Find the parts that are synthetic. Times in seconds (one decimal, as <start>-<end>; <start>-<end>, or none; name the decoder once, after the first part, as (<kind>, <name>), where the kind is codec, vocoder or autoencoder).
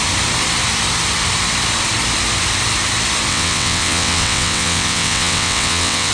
3.3-6.1 (vocoder, WaveNeXt)